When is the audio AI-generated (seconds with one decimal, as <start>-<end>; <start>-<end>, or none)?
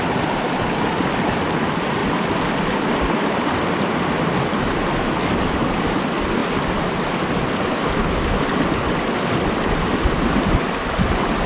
none